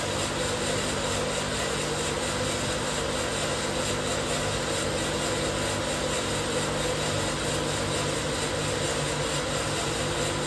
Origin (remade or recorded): recorded